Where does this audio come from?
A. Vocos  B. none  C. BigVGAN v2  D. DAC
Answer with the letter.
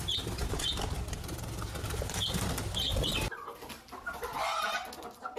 B